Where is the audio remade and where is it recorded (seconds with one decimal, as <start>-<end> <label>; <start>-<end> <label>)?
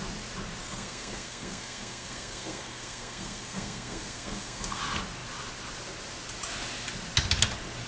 0.0-0.6 recorded; 0.6-4.8 remade; 4.8-7.9 recorded